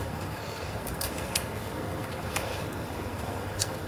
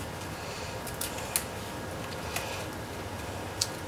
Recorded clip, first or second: second